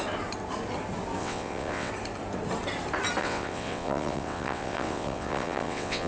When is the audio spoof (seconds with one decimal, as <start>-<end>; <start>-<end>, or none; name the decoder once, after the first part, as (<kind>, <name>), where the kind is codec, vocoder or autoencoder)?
1.2-1.9 (vocoder, WaveNeXt); 3.2-6.1